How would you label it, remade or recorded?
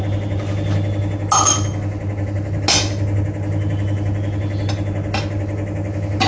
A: recorded